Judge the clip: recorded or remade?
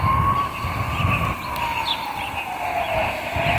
recorded